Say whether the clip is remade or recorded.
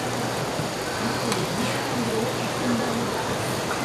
recorded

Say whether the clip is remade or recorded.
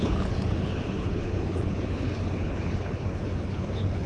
remade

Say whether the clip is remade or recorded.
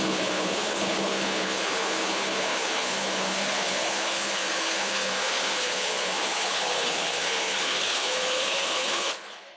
remade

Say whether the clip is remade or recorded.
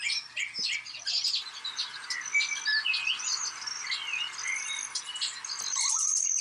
recorded